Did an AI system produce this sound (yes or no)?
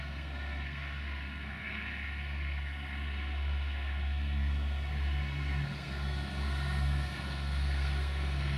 yes